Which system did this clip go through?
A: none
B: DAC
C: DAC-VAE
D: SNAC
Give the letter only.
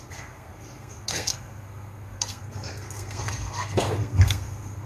D